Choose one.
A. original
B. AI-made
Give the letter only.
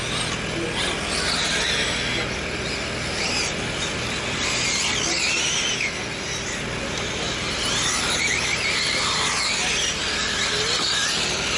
A